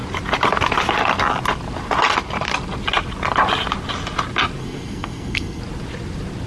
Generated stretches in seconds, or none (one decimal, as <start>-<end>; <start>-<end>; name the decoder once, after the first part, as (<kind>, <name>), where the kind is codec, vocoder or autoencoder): 4.6-5.6 (codec, SNAC)